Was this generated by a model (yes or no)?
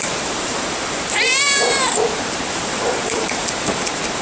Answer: yes